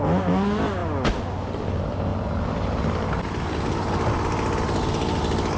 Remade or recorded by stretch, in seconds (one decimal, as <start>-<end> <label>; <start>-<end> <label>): 0.0-5.6 recorded